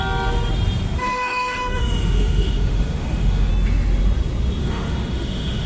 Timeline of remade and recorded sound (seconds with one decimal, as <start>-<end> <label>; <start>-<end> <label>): 0.0-1.0 recorded; 1.0-3.5 remade; 3.5-4.6 recorded; 4.6-5.7 remade